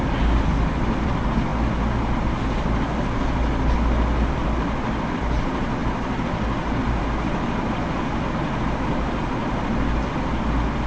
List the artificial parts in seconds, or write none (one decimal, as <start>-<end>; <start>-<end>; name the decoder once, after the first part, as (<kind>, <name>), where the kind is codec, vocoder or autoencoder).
none